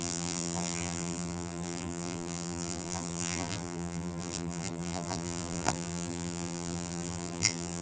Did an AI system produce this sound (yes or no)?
yes